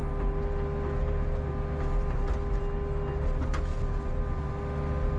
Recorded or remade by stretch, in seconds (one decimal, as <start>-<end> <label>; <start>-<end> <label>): 0.0-3.7 recorded; 3.7-4.6 remade; 4.6-5.2 recorded